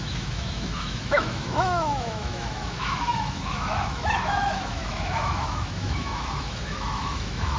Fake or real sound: fake